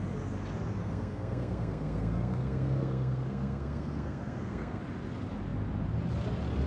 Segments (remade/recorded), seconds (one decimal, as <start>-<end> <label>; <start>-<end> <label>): 0.0-0.8 recorded; 0.8-4.8 remade; 4.8-6.7 recorded